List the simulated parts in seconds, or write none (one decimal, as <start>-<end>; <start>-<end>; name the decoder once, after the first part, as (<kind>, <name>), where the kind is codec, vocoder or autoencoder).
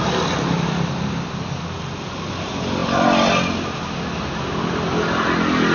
none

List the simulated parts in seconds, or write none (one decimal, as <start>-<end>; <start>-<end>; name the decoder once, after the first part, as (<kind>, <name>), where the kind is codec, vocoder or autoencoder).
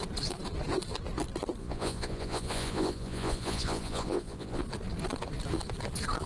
1.6-4.6 (vocoder, Vocos)